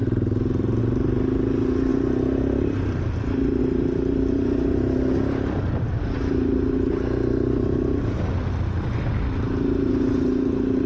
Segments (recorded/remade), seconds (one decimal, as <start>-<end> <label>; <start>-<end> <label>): 0.0-10.9 recorded